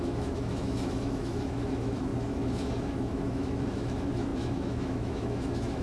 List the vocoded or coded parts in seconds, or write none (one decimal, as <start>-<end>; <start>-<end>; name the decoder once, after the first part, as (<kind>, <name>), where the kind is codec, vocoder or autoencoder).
0.0-5.8 (autoencoder, DAC-VAE)